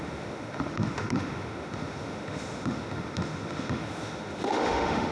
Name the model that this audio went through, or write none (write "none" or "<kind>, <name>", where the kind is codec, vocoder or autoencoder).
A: autoencoder, DAC-VAE